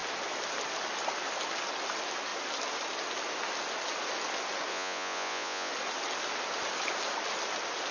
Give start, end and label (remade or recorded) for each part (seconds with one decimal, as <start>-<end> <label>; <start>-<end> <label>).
0.0-4.7 recorded; 4.7-5.7 remade; 5.7-7.9 recorded